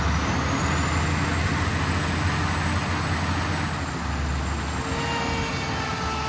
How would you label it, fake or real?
real